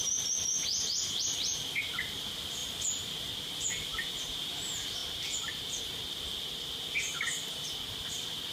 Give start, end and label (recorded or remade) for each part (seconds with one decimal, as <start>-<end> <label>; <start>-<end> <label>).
0.0-8.5 recorded